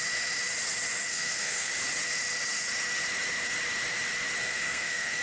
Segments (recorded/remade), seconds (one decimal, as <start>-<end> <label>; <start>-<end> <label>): 0.0-1.1 recorded; 1.1-1.7 remade; 1.7-4.4 recorded; 4.4-5.2 remade